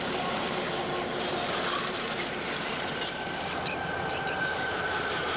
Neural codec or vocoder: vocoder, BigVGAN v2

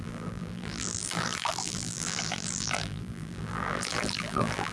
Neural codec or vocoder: vocoder, BigVGAN v2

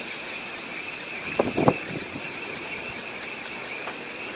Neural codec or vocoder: vocoder, BigVGAN v2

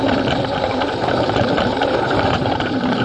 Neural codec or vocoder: vocoder, BigVGAN v2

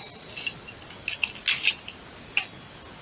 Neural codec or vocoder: none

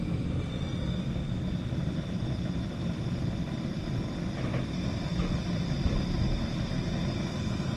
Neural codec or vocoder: none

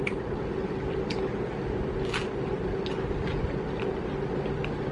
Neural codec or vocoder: none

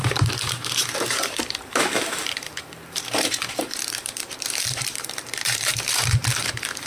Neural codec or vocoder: vocoder, BigVGAN v2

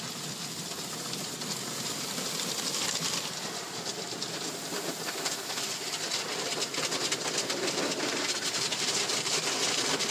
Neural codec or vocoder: vocoder, BigVGAN v2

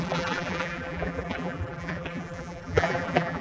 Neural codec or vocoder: vocoder, BigVGAN v2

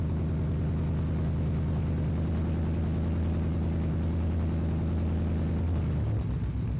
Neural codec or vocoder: none